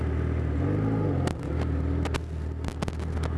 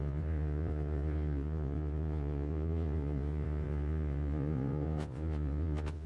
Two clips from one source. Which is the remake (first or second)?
second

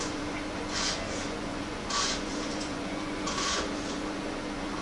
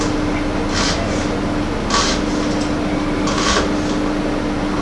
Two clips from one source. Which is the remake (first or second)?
first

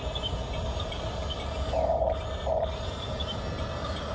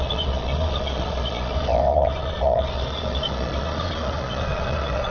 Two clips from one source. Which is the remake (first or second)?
second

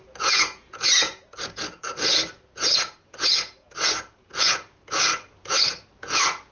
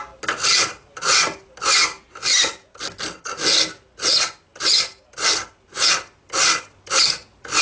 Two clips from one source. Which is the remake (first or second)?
first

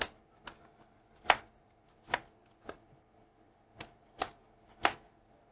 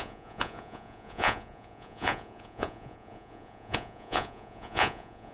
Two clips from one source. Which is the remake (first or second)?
second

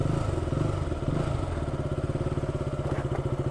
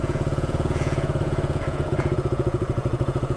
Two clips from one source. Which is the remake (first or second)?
second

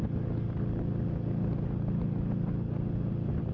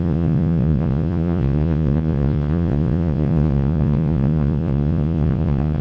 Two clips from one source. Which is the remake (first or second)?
second